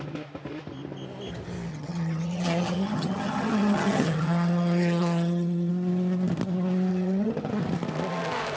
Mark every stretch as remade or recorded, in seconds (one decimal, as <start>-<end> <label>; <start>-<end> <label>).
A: 0.0-1.7 recorded; 1.7-5.7 remade; 5.7-6.9 recorded; 6.9-7.5 remade; 7.5-8.6 recorded